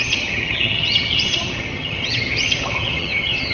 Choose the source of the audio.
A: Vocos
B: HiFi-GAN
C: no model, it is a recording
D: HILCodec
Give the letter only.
B